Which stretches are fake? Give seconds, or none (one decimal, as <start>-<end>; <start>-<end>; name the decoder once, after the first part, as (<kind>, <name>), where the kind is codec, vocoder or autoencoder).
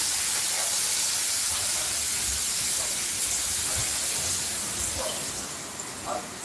none